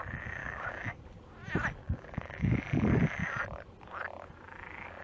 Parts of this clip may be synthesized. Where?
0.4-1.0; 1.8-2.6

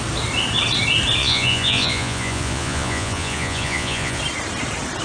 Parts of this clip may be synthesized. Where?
1.2-4.2

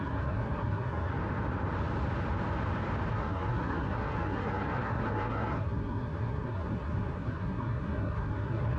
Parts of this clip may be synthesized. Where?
0.0-1.1; 3.1-8.8

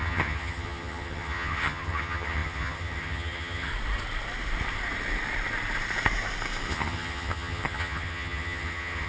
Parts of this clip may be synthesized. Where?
0.0-3.7; 6.7-9.1